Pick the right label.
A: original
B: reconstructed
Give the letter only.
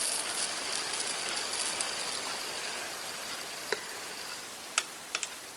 A